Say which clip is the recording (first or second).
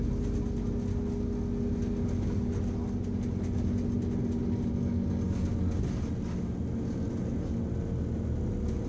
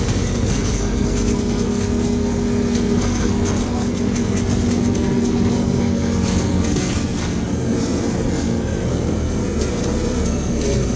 first